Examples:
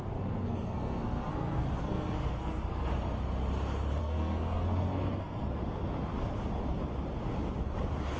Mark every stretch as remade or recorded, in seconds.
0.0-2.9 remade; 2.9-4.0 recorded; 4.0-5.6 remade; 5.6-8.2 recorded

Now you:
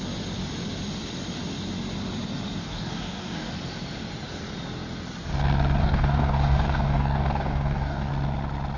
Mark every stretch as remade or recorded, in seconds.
0.0-2.6 recorded; 2.6-3.5 remade; 3.5-5.8 recorded; 5.8-8.1 remade; 8.1-8.8 recorded

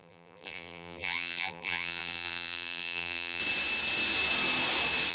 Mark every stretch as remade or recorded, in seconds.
0.0-3.4 remade; 3.4-5.1 recorded

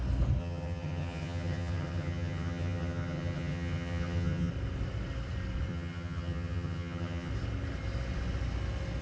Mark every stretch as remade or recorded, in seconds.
0.0-0.4 recorded; 0.4-4.5 remade; 4.5-5.7 recorded; 5.7-7.3 remade; 7.3-9.0 recorded

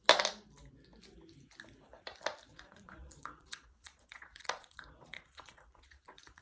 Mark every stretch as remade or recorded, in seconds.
0.0-2.5 recorded; 2.5-6.4 remade

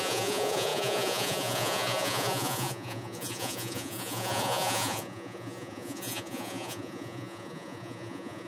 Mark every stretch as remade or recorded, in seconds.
0.0-8.5 remade

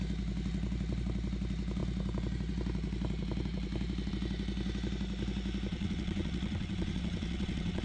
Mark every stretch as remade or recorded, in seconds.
0.0-5.7 recorded; 5.7-7.8 remade

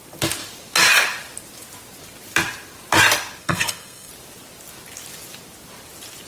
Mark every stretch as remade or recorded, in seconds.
0.0-3.4 recorded; 3.4-4.1 remade; 4.1-6.3 recorded